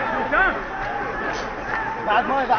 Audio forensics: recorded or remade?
recorded